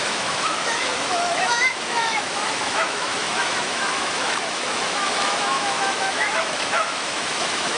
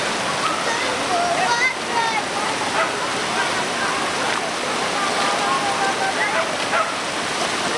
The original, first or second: second